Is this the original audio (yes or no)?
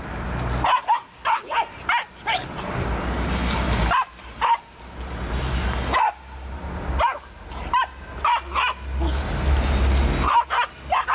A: yes